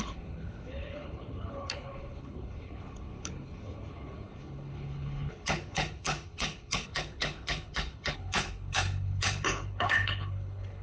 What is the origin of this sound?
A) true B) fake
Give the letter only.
B